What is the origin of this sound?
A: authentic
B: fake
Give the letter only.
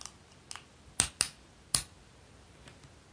A